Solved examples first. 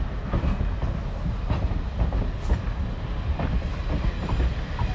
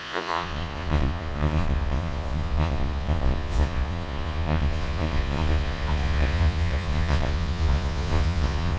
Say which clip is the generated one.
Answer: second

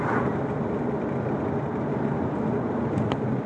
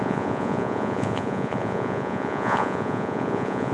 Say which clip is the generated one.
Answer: second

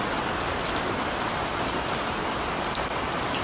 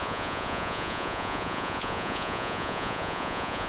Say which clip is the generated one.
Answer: second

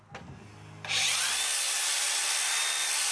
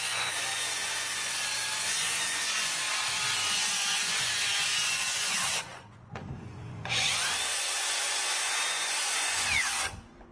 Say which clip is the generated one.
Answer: second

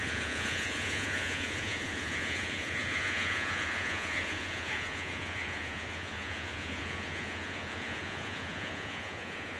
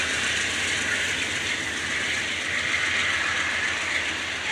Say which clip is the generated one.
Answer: first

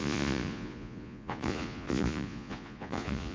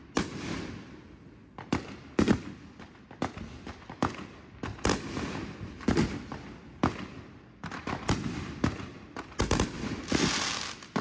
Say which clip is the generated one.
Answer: first